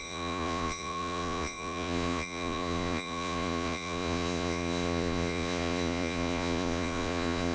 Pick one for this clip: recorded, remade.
remade